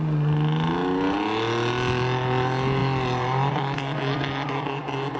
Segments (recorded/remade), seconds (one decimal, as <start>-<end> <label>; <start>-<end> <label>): 0.0-5.2 recorded